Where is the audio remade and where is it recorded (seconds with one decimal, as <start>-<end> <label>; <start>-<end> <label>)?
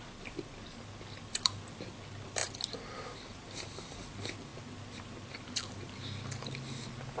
0.0-7.2 recorded